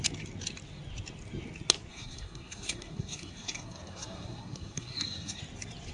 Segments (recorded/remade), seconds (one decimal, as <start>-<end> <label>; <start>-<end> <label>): 0.0-1.9 recorded; 1.9-5.4 remade; 5.4-5.9 recorded